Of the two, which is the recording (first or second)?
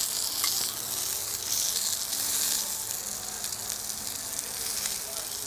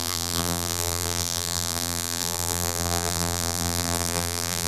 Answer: first